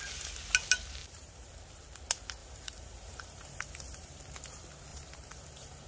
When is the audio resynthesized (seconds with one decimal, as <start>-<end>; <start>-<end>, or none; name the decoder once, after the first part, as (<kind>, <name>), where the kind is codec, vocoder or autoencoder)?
1.0-1.5 (vocoder, BigVGAN v2); 2.4-4.2; 4.9-5.9